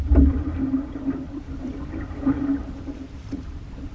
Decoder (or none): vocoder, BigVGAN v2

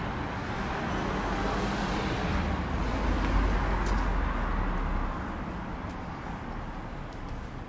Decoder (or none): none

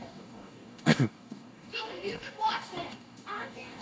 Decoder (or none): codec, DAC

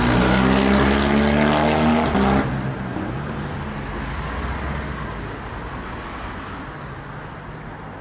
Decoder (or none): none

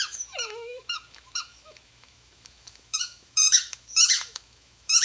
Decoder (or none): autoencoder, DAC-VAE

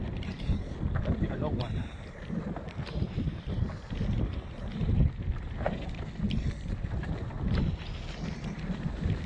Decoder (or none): none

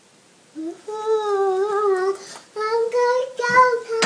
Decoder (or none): none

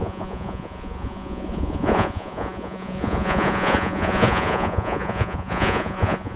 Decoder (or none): vocoder, Vocos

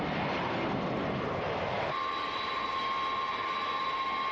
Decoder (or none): none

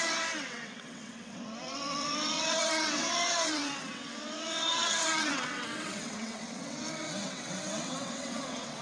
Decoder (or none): vocoder, WaveNeXt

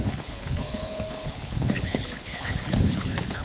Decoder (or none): codec, HILCodec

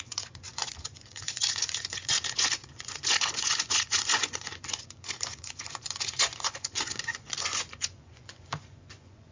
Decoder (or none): vocoder, Vocos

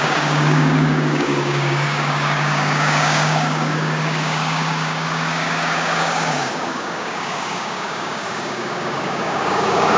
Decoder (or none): codec, DAC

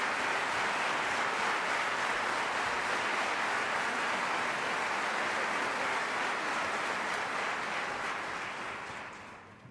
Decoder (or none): none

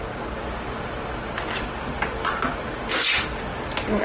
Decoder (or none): none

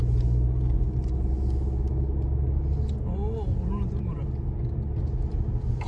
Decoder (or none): none